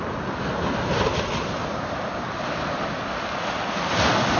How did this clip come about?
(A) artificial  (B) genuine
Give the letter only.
B